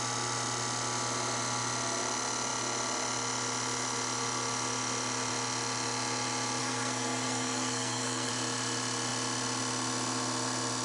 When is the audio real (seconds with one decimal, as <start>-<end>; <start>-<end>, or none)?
0.0-6.6; 8.3-10.8